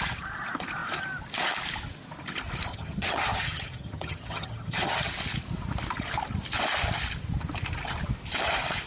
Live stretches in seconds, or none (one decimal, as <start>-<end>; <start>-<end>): 0.0-2.7; 5.1-8.9